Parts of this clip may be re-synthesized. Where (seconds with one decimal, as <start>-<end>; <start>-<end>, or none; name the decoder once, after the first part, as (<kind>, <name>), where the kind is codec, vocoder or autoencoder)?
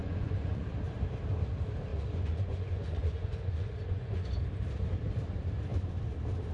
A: 0.0-0.7 (vocoder, Vocos); 1.9-4.4